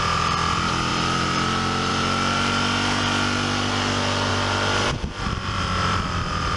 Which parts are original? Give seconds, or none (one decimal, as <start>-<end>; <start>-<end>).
0.0-0.9; 1.9-4.3